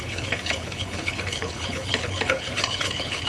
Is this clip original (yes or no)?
no